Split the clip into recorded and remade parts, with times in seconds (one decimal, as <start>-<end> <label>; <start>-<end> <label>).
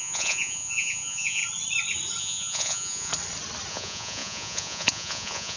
0.0-1.4 remade; 1.4-2.2 recorded; 2.2-3.1 remade; 3.1-3.7 recorded; 3.7-5.6 remade